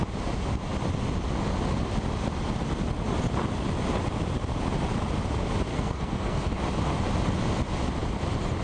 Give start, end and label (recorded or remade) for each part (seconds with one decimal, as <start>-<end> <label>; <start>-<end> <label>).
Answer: 0.0-5.7 recorded; 5.7-6.4 remade; 6.4-8.6 recorded